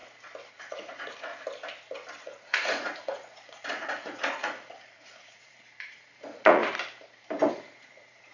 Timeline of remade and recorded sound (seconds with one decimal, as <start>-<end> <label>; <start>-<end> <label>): 0.0-0.5 recorded; 0.5-1.3 remade; 1.3-2.2 recorded; 2.2-6.6 remade; 6.6-7.5 recorded; 7.5-8.3 remade